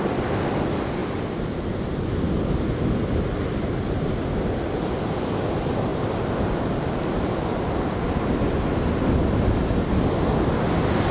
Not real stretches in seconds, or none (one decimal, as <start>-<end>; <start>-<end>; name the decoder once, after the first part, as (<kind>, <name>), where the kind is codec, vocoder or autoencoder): none